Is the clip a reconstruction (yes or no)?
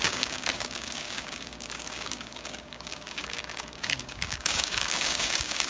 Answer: yes